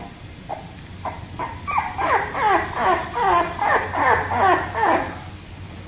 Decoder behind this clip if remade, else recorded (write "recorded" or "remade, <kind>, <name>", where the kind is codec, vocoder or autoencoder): recorded